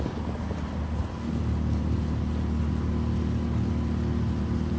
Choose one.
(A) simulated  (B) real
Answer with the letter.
B